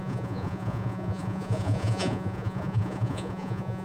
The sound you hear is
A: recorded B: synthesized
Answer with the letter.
B